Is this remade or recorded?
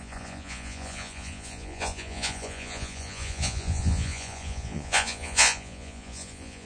remade